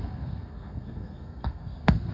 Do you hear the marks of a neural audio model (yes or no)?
yes